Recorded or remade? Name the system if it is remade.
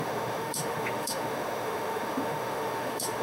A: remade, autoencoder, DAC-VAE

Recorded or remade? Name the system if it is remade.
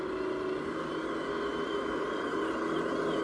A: recorded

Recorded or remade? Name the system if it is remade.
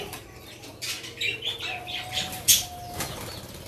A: recorded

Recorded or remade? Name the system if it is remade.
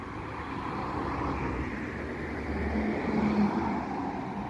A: recorded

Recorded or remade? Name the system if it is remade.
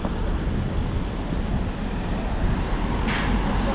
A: recorded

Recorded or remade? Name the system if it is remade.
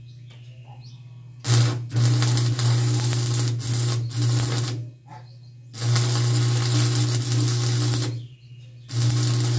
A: recorded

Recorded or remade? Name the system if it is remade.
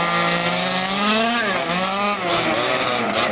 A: recorded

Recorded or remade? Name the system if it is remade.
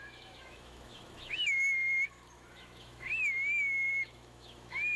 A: remade, autoencoder, DAC-VAE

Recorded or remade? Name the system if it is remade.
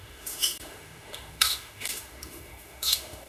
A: remade, autoencoder, DAC-VAE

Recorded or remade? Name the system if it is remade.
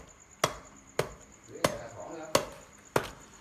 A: recorded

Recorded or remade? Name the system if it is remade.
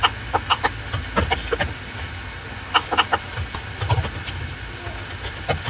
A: recorded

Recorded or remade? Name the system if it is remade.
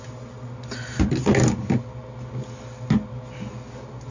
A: recorded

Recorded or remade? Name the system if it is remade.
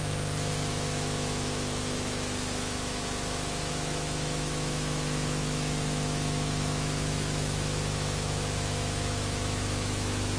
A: remade, autoencoder, DAC-VAE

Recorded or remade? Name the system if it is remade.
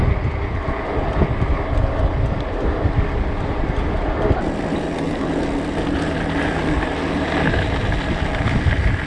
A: recorded